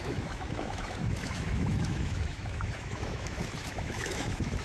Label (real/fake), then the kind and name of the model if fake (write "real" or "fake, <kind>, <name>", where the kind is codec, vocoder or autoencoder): fake, autoencoder, DAC-VAE